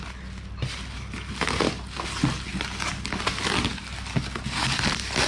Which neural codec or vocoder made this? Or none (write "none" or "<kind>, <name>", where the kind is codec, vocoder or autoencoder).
none